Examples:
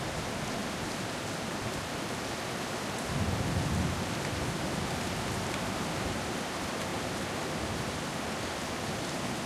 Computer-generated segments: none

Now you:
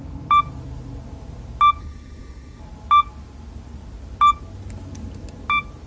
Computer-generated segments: 1.8-2.6 (codec, SNAC)

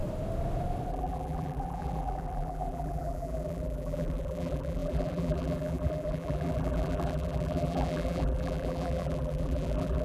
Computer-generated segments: 0.9-10.0 (vocoder, BigVGAN v2)

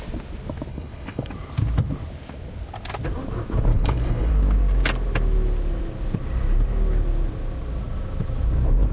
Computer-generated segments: 0.7-1.3 (codec, HILCodec); 3.7-4.3

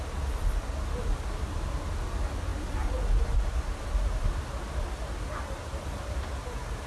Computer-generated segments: none

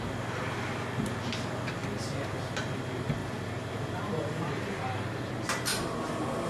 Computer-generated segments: 3.2-5.3 (vocoder, BigVGAN v2); 5.7-6.5

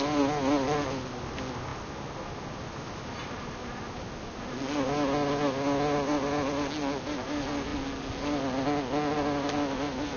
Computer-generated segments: none